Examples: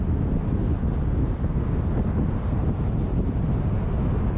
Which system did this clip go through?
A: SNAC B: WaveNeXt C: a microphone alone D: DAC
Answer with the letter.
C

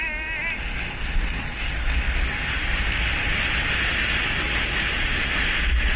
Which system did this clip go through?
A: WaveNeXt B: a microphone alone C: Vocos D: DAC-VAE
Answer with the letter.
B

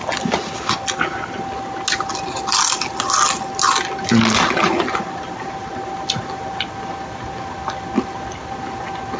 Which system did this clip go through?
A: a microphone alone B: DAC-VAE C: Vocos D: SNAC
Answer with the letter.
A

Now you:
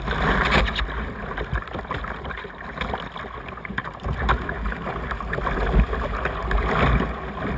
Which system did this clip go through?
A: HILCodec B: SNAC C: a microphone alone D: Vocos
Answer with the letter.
C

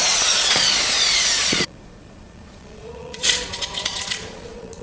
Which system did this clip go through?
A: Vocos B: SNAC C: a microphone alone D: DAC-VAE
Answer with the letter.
A